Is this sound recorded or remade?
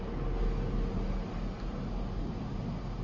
recorded